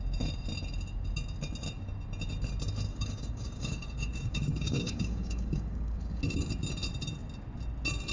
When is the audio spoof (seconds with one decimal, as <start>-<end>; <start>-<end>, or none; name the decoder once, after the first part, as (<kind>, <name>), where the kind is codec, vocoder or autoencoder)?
2.9-6.2 (codec, DAC)